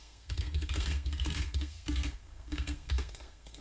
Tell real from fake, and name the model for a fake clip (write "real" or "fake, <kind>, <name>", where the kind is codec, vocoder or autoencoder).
fake, codec, SNAC